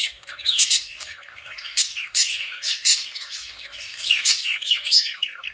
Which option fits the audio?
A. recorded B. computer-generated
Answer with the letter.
B